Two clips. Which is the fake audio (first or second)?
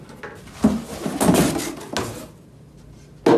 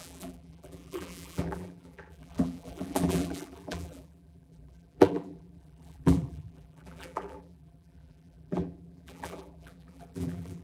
second